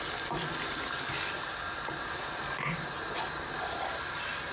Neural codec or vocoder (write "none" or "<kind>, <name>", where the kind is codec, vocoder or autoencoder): none